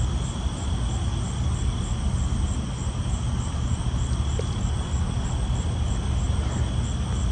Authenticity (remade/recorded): recorded